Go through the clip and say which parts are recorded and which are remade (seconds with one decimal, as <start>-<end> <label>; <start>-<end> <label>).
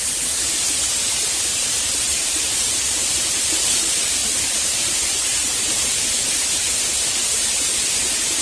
0.0-8.4 recorded